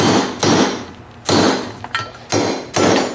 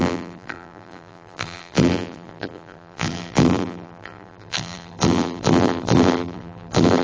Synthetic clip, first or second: second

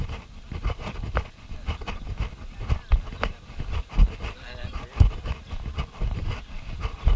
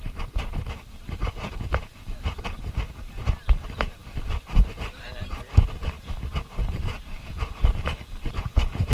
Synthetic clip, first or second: second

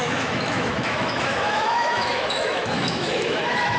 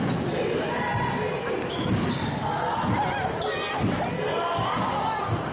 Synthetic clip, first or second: first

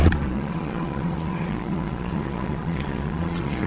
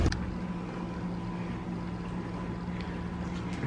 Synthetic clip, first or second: first